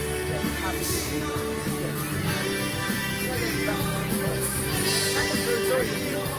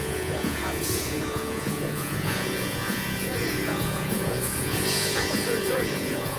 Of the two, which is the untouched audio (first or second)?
first